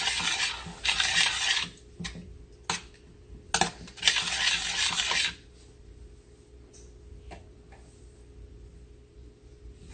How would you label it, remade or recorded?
recorded